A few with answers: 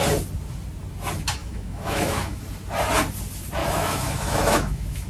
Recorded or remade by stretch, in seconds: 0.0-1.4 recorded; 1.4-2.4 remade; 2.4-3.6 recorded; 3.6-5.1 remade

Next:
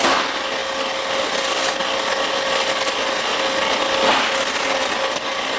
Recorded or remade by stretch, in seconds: 0.0-5.6 recorded

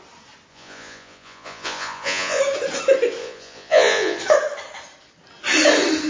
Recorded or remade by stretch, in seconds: 0.0-0.5 recorded; 0.5-2.4 remade; 2.4-3.2 recorded; 3.2-4.2 remade; 4.2-6.1 recorded

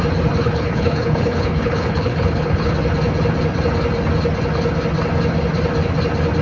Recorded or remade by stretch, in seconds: 0.0-0.4 recorded; 0.4-2.7 remade; 2.7-6.4 recorded

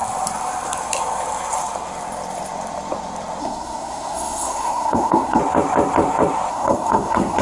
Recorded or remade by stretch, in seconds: 0.0-3.4 recorded; 3.4-5.4 remade; 5.4-6.5 recorded; 6.5-7.4 remade

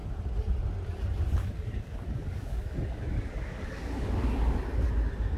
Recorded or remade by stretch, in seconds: 0.0-1.4 recorded; 1.4-4.6 remade; 4.6-5.4 recorded

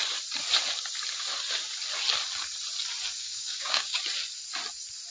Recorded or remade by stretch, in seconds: 0.0-3.2 recorded; 3.2-4.0 remade; 4.0-5.1 recorded

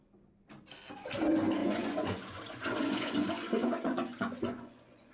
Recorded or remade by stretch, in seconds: 0.0-1.6 recorded; 1.6-5.1 remade